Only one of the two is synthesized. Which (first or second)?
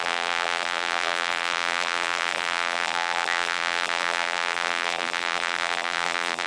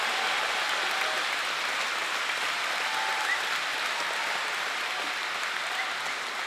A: first